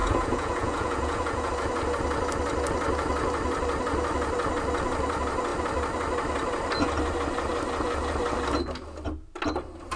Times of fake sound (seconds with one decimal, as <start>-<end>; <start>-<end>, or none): 0.0-1.5

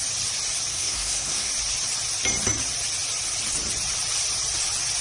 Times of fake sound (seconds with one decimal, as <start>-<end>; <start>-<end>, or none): 0.7-1.5

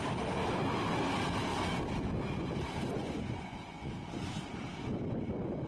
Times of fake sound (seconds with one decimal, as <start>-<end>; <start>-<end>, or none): 2.9-3.9